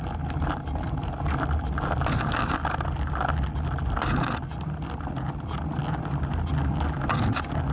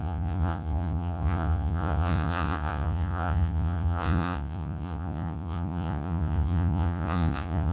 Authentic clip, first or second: first